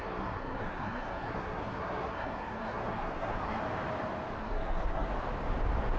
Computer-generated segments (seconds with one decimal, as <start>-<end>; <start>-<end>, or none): 0.0-3.6; 4.4-5.1